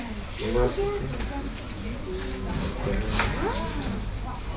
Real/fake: real